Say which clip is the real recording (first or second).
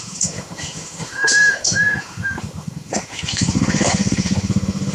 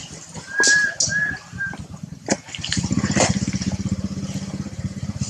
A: second